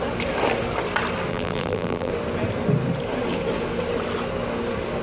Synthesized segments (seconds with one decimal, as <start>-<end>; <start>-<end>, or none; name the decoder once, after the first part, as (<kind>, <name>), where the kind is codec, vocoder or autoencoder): 1.3-2.1 (vocoder, BigVGAN v2)